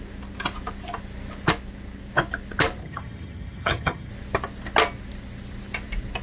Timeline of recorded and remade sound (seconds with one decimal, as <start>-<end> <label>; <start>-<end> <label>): 0.0-2.8 recorded; 2.8-4.1 remade; 4.1-6.2 recorded